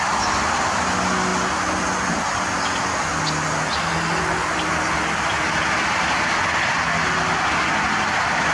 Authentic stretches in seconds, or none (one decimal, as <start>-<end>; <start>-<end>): 0.0-8.5